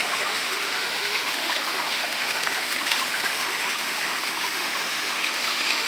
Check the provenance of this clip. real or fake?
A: fake